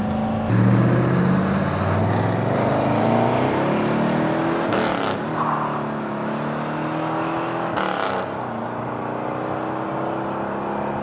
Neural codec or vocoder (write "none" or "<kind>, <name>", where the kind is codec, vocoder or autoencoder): none